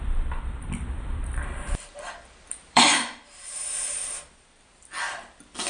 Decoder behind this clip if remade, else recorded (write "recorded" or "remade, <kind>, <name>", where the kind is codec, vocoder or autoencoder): remade, vocoder, BigVGAN v2